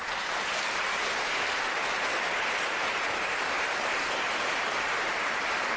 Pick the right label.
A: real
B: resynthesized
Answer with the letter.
B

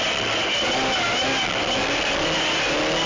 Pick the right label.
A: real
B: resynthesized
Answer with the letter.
A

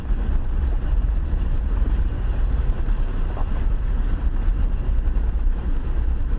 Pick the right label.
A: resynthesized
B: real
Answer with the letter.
A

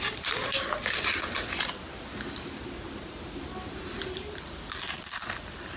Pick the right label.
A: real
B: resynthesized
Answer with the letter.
A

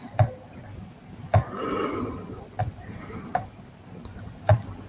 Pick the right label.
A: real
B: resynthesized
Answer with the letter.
B